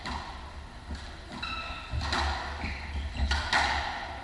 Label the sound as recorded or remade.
recorded